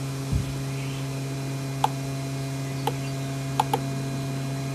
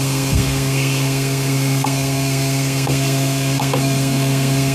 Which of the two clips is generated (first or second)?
second